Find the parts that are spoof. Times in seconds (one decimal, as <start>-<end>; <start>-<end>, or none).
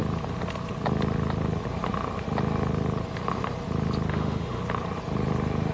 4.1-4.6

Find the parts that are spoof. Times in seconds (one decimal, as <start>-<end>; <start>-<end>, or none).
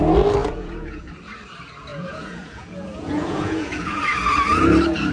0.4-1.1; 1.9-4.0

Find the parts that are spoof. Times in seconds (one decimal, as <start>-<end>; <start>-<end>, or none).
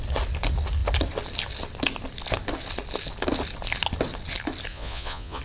4.7-5.4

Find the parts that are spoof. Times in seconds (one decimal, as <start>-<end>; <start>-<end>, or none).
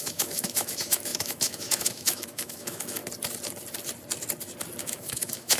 0.0-3.0; 4.8-5.6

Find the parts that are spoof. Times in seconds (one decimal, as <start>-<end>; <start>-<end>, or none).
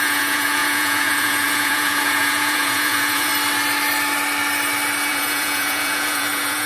0.0-3.3; 5.1-6.7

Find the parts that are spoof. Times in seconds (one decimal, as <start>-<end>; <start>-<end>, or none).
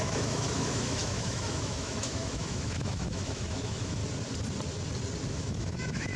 0.0-4.0; 5.3-6.2